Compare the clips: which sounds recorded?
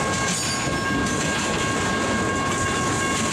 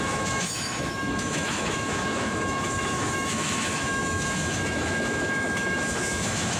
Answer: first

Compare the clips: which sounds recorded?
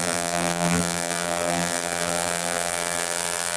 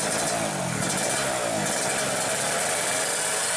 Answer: second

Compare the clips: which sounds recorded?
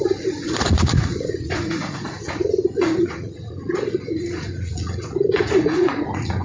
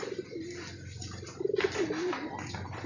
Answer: second